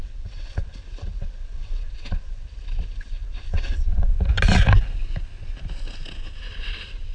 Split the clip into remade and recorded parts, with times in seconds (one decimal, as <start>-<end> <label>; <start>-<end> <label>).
0.0-4.1 remade; 4.1-6.4 recorded; 6.4-7.1 remade